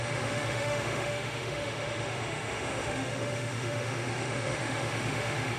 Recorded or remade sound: remade